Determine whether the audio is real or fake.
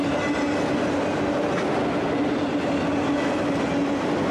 real